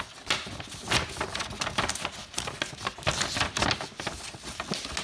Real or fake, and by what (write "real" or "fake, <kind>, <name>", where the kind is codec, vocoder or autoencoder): real